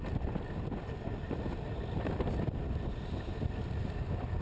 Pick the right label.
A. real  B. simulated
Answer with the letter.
A